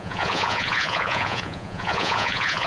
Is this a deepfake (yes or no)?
yes